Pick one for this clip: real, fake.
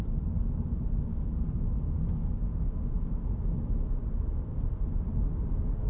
real